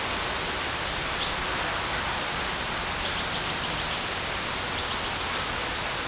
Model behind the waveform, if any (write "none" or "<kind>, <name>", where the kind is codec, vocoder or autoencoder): none